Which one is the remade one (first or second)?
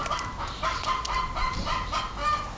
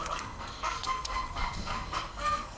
second